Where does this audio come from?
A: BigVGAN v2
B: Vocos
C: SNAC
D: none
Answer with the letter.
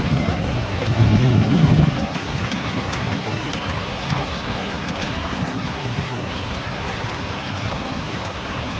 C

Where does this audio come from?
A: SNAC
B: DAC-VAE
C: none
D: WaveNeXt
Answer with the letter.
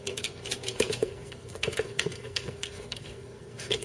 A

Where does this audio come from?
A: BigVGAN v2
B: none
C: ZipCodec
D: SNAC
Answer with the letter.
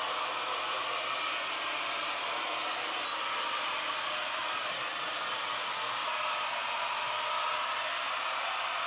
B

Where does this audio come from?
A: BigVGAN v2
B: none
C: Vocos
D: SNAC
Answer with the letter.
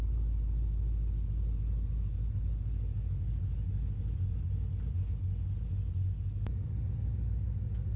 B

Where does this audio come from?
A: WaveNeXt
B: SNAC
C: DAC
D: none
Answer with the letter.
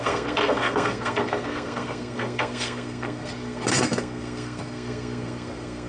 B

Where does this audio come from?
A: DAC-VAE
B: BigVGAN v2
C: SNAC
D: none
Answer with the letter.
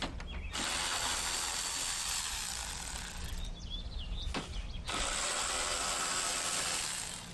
D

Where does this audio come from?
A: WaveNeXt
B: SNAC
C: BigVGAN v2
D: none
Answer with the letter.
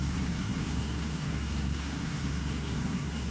B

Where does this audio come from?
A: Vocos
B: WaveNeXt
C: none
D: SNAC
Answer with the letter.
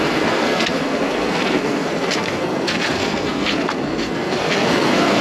D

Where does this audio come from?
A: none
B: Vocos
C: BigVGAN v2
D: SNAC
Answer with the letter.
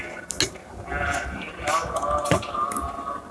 A